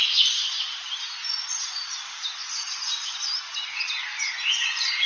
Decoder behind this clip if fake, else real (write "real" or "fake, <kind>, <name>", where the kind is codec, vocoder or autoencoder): real